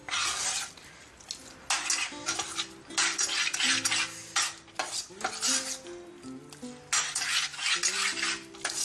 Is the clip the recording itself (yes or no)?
yes